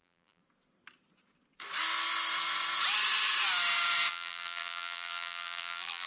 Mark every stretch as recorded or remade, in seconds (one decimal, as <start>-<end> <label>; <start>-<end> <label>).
0.0-0.4 remade; 0.4-4.1 recorded; 4.1-6.1 remade